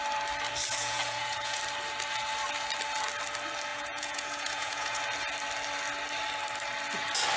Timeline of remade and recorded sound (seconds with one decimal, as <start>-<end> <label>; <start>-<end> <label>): 0.0-0.8 recorded; 0.8-1.6 remade; 1.6-3.7 recorded; 3.7-5.0 remade; 5.0-7.4 recorded